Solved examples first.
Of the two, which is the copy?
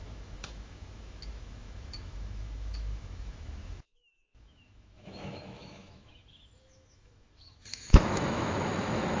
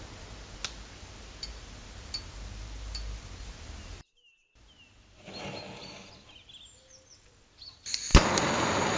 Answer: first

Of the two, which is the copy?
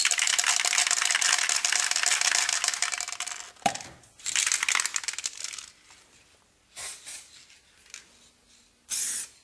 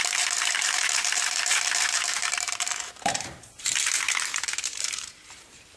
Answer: second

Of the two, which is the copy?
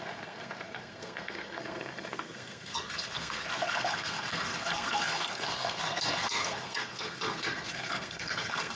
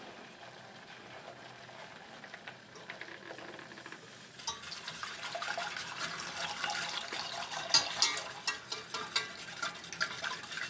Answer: first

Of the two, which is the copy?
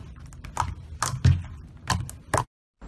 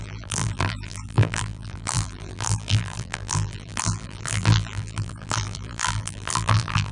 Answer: second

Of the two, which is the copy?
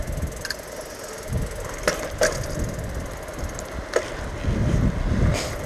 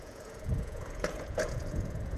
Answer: second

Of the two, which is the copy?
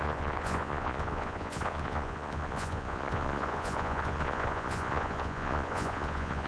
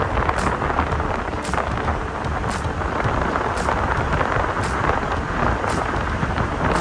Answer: first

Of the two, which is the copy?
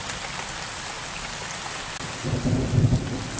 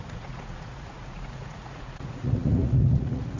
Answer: second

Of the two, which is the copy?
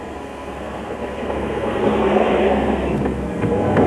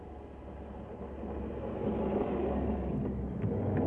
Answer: first